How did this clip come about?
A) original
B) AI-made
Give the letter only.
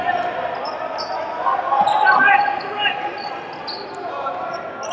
A